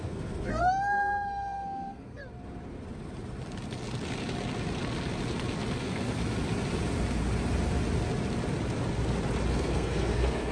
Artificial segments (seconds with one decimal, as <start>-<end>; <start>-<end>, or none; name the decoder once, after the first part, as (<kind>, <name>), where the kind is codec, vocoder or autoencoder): 0.0-2.2 (codec, SNAC); 5.8-6.2; 9.5-10.5

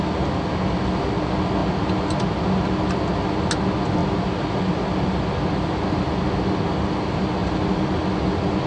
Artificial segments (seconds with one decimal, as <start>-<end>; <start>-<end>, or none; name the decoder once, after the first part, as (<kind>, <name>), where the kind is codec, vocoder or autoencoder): none

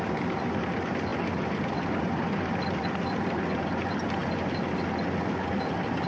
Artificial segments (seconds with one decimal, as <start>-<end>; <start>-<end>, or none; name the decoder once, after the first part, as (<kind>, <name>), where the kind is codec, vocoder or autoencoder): 0.0-4.2 (vocoder, BigVGAN v2); 5.5-6.1

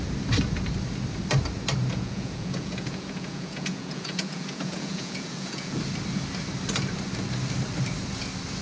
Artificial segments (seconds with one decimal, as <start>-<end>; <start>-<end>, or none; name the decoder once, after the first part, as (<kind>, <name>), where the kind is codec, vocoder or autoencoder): 1.9-5.8 (vocoder, Vocos)

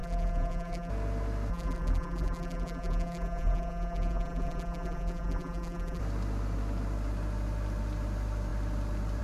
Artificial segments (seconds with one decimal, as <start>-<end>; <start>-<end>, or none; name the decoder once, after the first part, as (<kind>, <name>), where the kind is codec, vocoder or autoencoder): 0.0-0.9 (vocoder, BigVGAN v2); 1.5-6.0